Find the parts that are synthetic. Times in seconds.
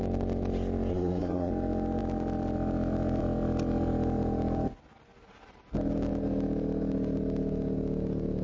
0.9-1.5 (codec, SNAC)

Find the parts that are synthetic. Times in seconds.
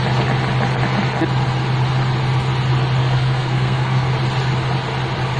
3.0-4.1 (codec, SNAC)